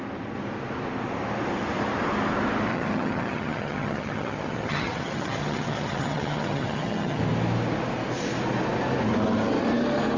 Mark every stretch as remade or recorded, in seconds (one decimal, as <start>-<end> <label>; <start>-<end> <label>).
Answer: 0.0-2.7 recorded; 2.7-7.2 remade; 7.2-10.2 recorded